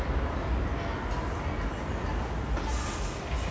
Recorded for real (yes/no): yes